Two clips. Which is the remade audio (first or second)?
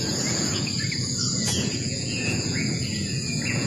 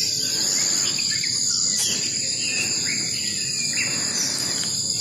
first